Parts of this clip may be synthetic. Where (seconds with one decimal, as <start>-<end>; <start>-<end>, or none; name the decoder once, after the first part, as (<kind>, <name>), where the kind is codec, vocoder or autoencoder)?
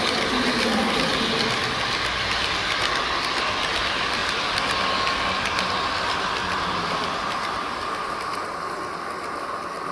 6.4-8.5 (vocoder, BigVGAN v2)